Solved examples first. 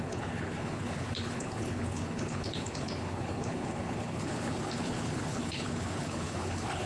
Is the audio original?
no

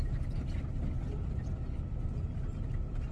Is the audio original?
yes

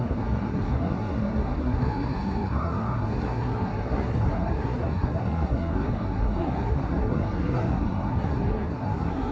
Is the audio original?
no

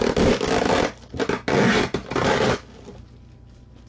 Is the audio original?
yes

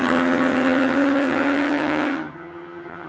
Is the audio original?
no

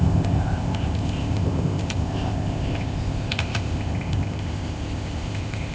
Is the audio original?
no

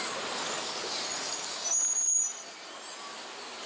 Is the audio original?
yes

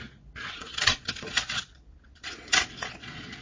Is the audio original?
no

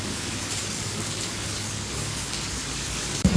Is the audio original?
no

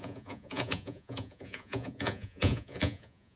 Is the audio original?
no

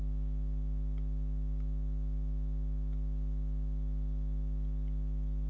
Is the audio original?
yes